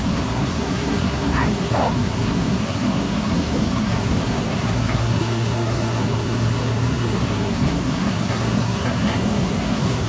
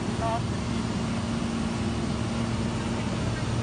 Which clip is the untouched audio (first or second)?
second